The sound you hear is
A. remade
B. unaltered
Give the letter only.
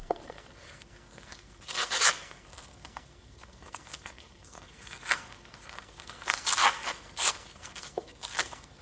A